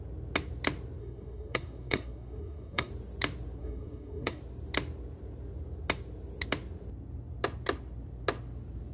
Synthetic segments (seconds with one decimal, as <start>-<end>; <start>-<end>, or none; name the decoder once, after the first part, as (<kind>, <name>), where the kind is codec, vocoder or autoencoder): 1.0-2.9 (codec, SNAC); 3.6-4.4